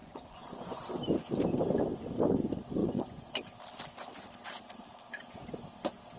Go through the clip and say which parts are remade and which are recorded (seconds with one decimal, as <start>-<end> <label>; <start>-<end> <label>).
0.0-0.9 remade; 0.9-2.8 recorded; 2.8-3.4 remade; 3.4-6.2 recorded